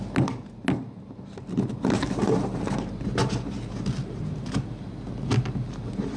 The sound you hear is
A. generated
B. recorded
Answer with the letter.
B